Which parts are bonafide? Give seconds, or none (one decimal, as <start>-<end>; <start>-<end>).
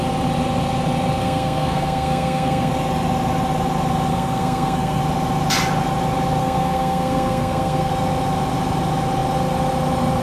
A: 0.0-1.2; 2.7-4.1; 5.0-6.4; 7.9-10.2